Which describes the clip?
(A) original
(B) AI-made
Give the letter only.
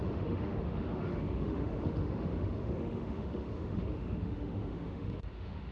B